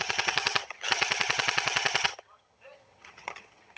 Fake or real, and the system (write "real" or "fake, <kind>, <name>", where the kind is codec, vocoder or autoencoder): fake, vocoder, HiFi-GAN